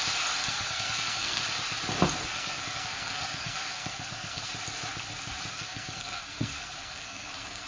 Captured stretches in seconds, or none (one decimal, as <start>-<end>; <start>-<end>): 0.0-0.4; 1.4-2.3; 4.5-5.5

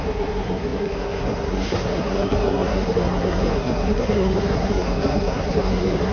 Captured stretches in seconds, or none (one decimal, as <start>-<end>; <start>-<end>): none

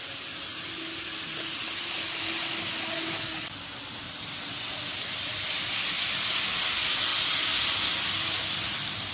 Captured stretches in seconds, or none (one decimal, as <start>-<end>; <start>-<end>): 0.0-9.1